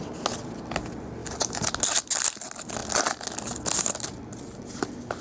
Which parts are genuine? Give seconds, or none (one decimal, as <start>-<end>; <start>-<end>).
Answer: 0.0-1.2; 1.8-5.2